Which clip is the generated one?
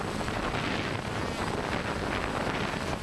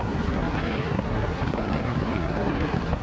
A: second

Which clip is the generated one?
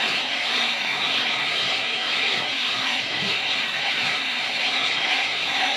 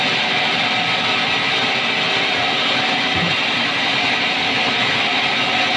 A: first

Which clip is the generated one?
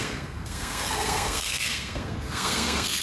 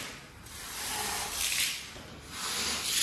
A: first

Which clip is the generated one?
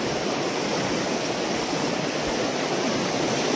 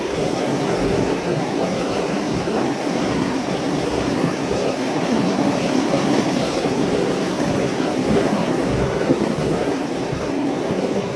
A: second